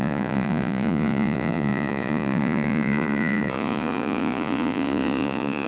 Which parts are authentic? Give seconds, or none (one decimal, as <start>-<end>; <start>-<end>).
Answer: none